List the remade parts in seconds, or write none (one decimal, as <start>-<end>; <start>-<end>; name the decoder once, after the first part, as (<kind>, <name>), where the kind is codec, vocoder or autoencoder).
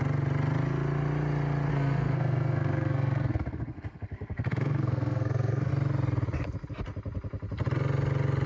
1.7-5.7 (codec, SNAC)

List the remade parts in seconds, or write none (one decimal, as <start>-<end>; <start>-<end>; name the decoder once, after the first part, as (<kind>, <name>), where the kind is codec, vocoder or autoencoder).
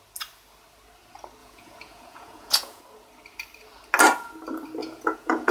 1.4-2.8 (vocoder, Vocos); 4.8-5.5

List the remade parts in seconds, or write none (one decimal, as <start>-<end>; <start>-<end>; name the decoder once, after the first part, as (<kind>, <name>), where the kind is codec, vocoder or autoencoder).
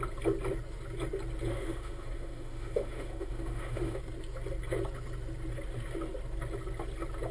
1.5-4.0 (autoencoder, DAC-VAE)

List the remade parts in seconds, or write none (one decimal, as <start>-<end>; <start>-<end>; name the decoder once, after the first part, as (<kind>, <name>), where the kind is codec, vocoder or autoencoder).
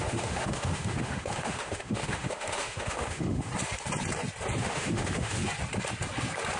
0.0-3.5 (autoencoder, DAC-VAE); 4.6-5.4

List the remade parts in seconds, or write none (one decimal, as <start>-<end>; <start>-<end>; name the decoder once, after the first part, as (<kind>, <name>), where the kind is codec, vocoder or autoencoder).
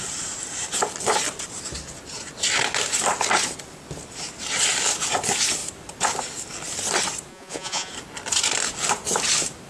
7.3-7.9 (vocoder, Vocos)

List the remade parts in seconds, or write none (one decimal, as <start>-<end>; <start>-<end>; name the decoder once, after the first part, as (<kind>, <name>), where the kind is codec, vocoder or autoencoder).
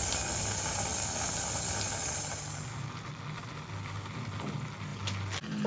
none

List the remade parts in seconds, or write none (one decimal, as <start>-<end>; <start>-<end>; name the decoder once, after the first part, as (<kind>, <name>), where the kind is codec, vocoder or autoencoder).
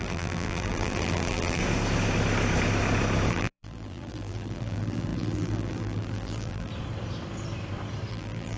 0.0-1.6 (vocoder, BigVGAN v2); 3.3-6.7; 8.1-8.6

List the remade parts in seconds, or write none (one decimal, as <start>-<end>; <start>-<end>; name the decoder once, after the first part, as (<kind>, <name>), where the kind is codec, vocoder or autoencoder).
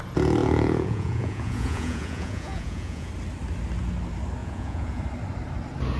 0.4-3.1 (vocoder, Vocos); 4.4-5.0